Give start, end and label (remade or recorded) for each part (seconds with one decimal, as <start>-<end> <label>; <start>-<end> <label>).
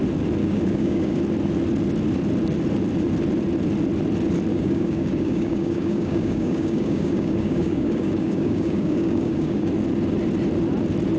0.0-0.4 recorded; 0.4-1.2 remade; 1.2-4.5 recorded; 4.5-9.7 remade; 9.7-11.2 recorded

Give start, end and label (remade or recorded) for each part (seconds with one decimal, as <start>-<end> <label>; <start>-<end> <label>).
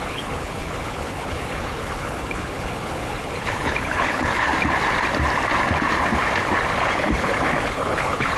0.0-4.5 remade; 4.5-6.8 recorded; 6.8-8.4 remade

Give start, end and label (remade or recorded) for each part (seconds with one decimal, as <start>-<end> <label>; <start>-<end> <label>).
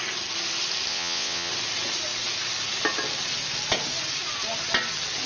0.0-0.9 recorded; 0.9-1.5 remade; 1.5-5.3 recorded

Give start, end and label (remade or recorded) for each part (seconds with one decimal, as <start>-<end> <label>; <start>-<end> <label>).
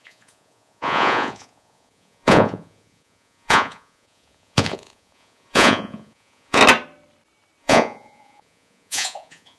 0.0-6.6 remade; 6.6-7.6 recorded; 7.6-9.6 remade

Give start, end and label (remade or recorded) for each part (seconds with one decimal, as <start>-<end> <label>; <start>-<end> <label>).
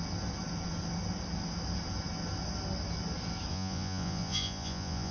0.0-3.5 recorded; 3.5-5.1 remade